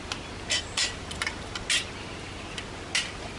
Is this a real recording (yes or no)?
yes